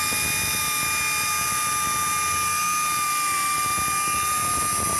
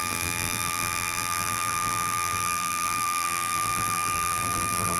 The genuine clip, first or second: first